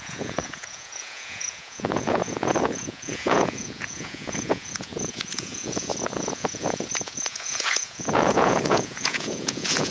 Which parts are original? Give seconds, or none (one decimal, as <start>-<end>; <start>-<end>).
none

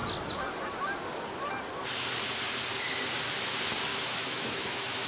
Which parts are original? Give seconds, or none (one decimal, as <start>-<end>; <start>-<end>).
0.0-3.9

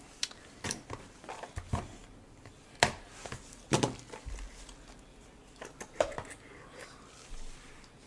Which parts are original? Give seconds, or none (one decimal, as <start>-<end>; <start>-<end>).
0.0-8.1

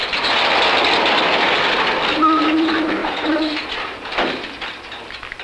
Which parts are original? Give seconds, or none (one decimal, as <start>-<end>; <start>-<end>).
0.0-3.0; 4.1-5.4